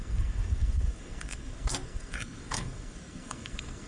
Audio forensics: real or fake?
fake